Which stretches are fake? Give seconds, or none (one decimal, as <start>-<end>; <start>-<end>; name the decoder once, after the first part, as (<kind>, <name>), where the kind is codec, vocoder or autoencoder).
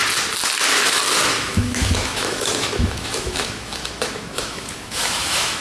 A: 1.3-5.6 (autoencoder, DAC-VAE)